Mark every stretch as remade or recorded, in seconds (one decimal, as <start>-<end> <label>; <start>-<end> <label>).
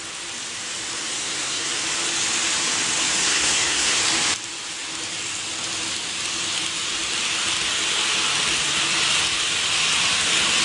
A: 0.0-1.1 recorded; 1.1-1.7 remade; 1.7-3.2 recorded; 3.2-4.0 remade; 4.0-10.6 recorded